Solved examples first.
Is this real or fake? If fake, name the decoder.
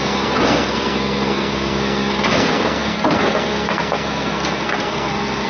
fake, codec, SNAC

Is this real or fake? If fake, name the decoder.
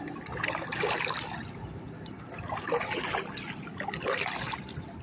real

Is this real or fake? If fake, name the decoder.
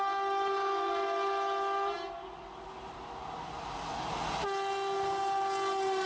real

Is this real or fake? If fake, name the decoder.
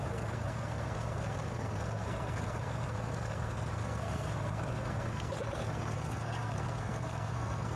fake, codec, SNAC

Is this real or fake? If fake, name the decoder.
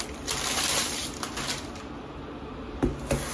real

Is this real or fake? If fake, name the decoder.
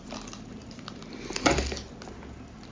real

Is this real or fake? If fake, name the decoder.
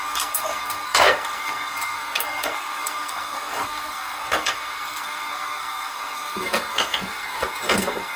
fake, codec, SNAC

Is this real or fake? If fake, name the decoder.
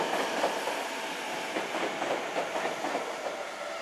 real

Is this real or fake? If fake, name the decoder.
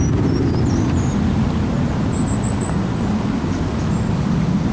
real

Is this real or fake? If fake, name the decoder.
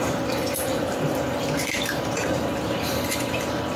fake, vocoder, BigVGAN v2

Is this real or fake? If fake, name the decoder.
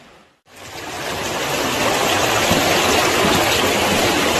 real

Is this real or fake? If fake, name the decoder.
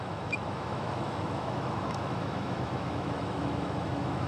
fake, autoencoder, DAC-VAE